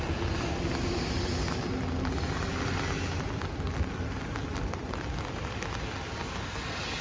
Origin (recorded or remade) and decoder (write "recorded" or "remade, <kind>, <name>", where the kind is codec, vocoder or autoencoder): recorded